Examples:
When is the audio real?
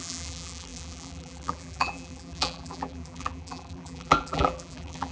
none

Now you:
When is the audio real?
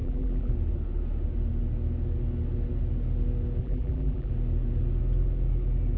0.5-3.6; 4.3-6.0